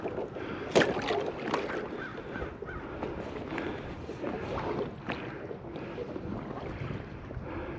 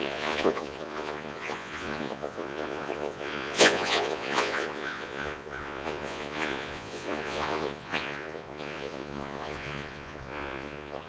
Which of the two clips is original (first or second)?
first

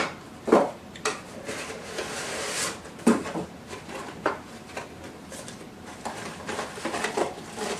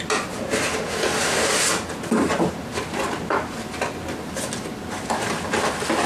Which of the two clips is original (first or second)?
second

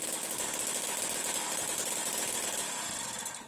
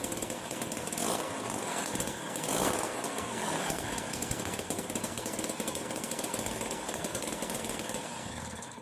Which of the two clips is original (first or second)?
first